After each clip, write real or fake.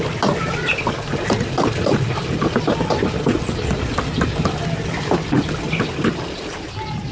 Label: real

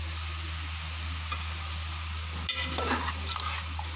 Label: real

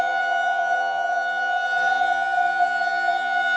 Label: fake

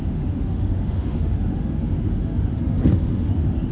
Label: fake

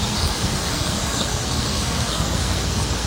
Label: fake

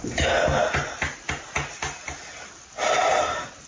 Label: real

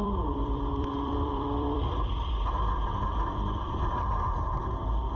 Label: fake